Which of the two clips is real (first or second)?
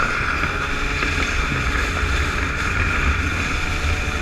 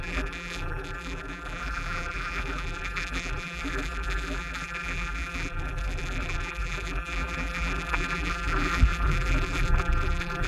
first